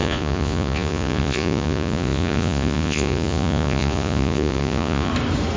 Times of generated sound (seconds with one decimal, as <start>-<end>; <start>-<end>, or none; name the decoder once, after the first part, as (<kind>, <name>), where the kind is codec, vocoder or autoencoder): 0.0-5.1 (vocoder, Vocos)